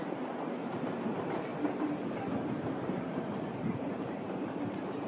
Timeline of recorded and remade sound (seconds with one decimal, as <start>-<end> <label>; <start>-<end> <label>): 0.0-1.5 remade; 1.5-2.5 recorded; 2.5-5.1 remade